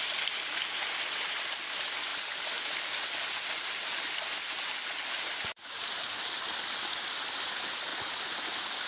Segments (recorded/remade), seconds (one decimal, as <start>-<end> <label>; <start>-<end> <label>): 0.0-8.9 recorded